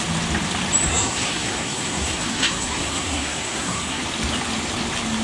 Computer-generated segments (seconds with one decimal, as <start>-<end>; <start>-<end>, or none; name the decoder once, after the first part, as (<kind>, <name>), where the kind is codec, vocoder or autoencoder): 0.9-4.0 (codec, SNAC)